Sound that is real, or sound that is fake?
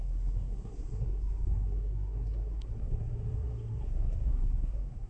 fake